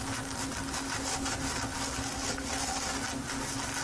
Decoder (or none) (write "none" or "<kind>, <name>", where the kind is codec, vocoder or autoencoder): none